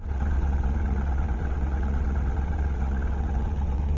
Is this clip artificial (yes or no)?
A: yes